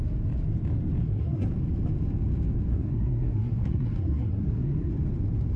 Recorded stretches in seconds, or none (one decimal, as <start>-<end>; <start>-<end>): 0.0-1.0; 1.5-2.7; 4.9-5.6